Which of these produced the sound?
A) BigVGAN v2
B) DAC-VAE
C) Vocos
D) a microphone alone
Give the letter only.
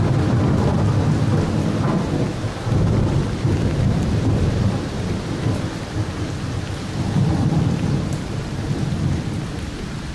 A